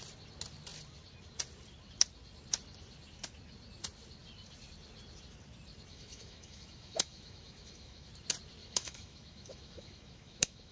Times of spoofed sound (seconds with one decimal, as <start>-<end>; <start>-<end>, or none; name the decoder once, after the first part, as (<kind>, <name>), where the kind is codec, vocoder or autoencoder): 5.9-8.1 (autoencoder, DAC-VAE); 8.6-10.7